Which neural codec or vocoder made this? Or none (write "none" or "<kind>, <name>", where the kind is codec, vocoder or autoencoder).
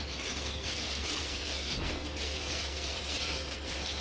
codec, SNAC